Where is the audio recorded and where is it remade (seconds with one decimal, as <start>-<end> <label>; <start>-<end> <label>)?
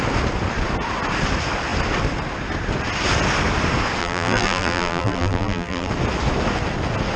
0.0-4.0 recorded; 4.0-5.9 remade; 5.9-7.2 recorded